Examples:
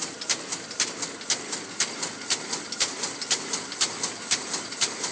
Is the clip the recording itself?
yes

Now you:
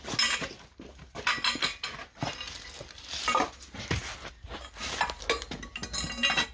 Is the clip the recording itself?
yes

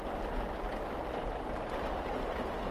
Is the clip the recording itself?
yes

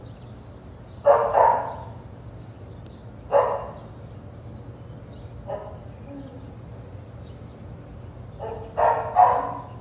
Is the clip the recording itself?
yes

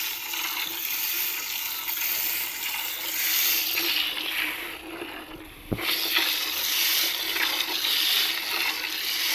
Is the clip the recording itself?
yes